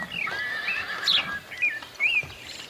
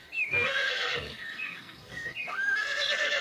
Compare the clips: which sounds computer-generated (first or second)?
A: second